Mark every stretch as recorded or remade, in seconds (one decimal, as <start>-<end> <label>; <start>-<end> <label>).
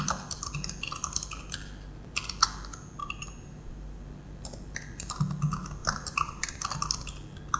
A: 0.0-3.0 recorded; 3.0-4.0 remade; 4.0-5.8 recorded; 5.8-6.6 remade; 6.6-7.6 recorded